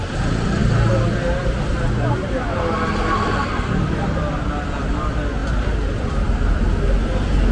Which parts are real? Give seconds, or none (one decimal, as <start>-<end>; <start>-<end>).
0.0-7.5